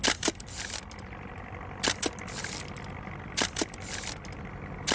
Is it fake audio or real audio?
real